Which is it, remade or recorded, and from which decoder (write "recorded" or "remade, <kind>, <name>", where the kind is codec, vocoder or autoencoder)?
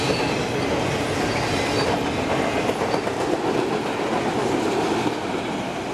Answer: recorded